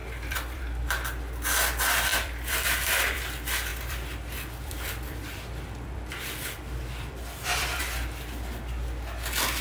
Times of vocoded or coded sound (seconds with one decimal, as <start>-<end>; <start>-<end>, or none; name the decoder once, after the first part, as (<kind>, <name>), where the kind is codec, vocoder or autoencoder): 0.0-0.6 (vocoder, BigVGAN v2); 2.1-3.2; 3.7-7.8